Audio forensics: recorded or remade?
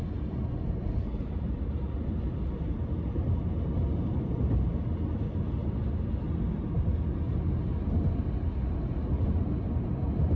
recorded